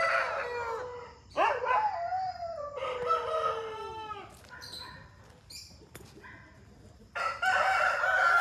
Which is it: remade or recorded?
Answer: recorded